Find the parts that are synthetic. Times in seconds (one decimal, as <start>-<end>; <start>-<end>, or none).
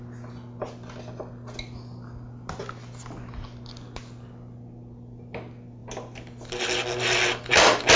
none